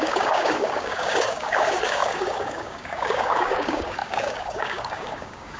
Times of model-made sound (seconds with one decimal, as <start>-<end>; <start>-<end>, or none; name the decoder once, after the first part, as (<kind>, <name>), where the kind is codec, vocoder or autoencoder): 0.0-5.6 (codec, DAC)